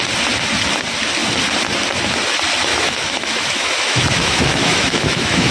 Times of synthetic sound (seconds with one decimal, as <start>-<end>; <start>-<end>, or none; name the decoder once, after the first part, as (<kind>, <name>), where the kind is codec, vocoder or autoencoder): 2.7-5.5 (autoencoder, DAC-VAE)